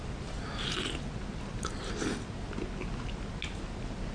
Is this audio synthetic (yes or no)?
no